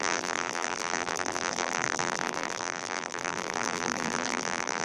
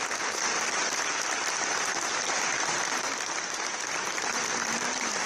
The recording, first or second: second